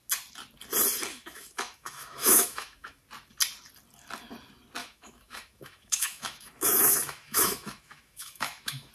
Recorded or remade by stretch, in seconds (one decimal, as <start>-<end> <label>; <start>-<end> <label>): 0.0-1.1 recorded; 1.1-3.0 remade; 3.0-4.8 recorded; 4.8-8.9 remade